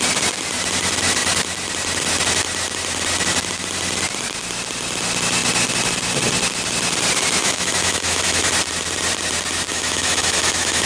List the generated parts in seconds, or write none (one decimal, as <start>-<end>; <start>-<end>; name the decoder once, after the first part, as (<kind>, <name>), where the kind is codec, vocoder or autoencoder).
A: 7.4-8.5 (autoencoder, DAC-VAE); 9.7-10.9